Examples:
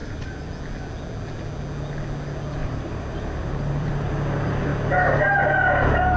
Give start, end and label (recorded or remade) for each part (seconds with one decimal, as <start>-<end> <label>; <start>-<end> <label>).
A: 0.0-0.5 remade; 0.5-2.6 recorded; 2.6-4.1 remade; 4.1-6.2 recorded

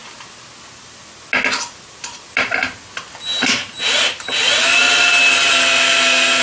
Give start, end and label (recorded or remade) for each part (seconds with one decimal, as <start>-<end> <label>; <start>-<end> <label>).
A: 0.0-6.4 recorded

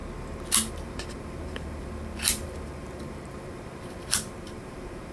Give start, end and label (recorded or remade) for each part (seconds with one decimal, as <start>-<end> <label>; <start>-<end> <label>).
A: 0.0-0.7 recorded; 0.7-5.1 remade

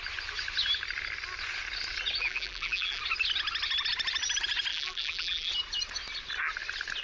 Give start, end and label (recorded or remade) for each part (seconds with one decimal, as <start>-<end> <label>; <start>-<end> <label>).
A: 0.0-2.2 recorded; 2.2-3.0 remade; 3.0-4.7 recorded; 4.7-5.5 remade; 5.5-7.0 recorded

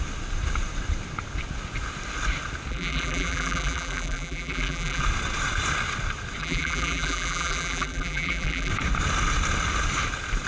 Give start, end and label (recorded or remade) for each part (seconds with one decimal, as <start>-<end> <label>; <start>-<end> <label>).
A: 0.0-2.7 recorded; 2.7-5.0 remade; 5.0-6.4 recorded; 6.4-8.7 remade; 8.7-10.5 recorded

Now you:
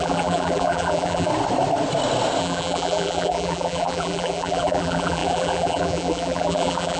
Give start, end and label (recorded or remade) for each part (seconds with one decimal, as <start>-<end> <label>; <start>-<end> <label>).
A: 0.0-1.3 remade; 1.3-2.4 recorded; 2.4-7.0 remade